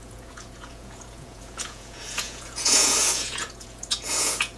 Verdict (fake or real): fake